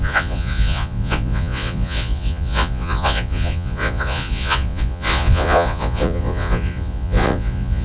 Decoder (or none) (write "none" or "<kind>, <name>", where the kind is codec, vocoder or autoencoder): vocoder, Vocos